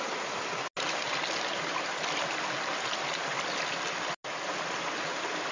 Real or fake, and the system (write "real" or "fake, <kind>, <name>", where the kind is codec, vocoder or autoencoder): real